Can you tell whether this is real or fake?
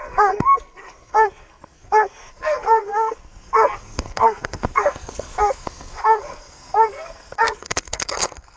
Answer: fake